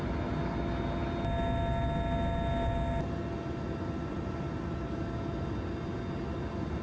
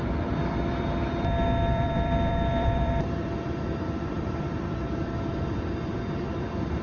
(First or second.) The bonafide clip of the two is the first